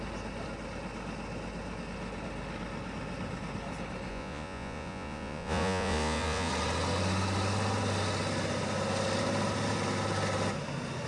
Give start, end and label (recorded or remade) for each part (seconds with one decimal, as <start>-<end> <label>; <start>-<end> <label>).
0.0-4.1 recorded; 4.1-6.5 remade; 6.5-11.1 recorded